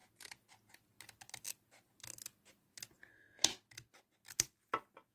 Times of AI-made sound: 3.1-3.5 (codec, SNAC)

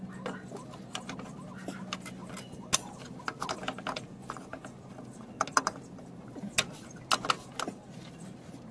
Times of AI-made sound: none